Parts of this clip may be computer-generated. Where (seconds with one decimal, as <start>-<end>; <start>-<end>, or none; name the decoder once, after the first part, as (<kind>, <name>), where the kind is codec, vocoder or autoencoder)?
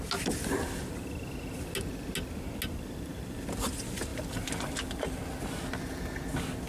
4.1-4.6 (vocoder, BigVGAN v2)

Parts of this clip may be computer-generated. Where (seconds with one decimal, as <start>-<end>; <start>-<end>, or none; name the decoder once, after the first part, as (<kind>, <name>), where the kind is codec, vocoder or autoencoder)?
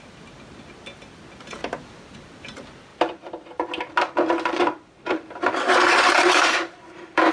2.9-7.3 (vocoder, BigVGAN v2)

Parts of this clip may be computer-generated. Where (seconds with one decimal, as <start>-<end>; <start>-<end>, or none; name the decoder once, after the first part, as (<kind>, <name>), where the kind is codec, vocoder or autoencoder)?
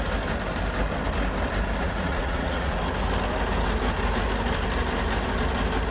1.8-2.8 (vocoder, Vocos)